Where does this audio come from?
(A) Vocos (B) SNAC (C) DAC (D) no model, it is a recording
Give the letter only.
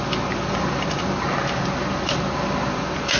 D